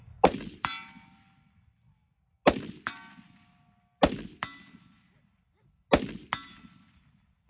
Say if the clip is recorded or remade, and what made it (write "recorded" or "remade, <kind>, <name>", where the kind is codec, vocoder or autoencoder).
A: recorded